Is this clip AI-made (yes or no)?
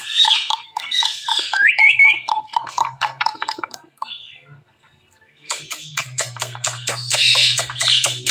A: yes